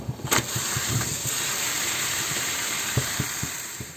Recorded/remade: remade